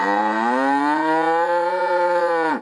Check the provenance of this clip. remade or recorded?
remade